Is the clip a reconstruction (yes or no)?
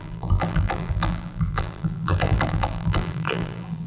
yes